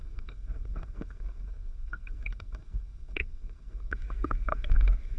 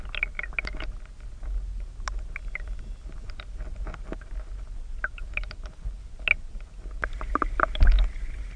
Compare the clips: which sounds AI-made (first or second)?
first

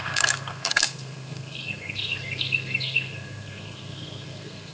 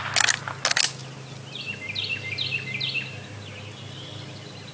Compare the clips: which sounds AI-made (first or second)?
first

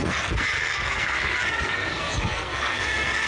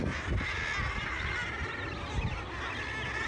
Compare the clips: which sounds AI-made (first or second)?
first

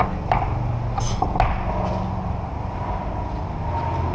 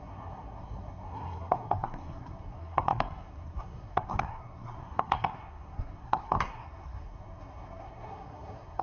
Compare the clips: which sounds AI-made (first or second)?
second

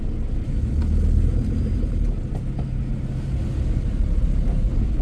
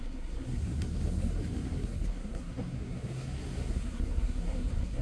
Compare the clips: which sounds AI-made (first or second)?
second